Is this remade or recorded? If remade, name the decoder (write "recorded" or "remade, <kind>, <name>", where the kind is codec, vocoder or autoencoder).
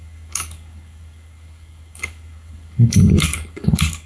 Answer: remade, codec, DAC